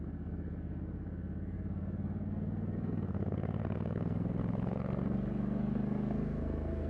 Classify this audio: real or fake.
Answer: fake